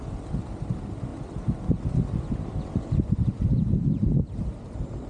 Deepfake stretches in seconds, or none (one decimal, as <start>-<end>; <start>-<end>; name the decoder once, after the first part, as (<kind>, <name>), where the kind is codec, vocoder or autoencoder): none